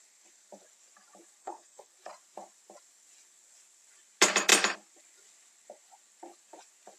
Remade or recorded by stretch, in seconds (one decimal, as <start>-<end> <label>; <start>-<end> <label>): 0.0-1.4 recorded; 1.4-1.9 remade; 1.9-7.0 recorded